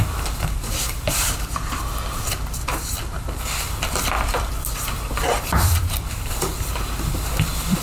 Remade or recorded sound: remade